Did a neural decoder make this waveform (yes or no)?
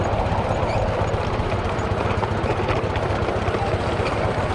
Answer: no